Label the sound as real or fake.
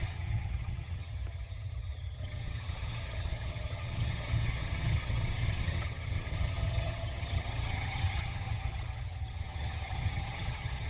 fake